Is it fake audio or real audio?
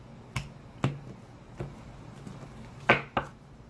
real